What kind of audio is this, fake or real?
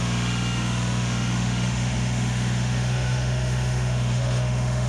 fake